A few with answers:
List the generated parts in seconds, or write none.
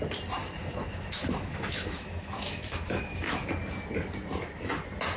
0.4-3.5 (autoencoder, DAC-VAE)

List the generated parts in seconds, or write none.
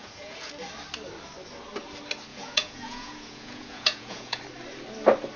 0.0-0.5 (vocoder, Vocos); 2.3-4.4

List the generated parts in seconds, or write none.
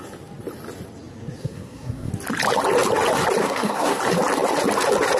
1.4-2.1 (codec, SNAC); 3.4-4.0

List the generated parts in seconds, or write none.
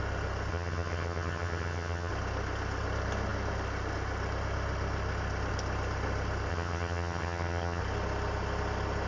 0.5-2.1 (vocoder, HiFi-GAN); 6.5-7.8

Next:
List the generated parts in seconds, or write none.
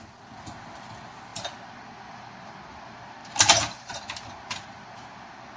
none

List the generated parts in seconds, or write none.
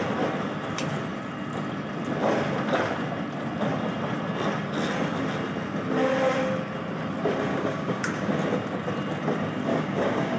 7.5-8.3 (codec, DAC); 9.7-10.4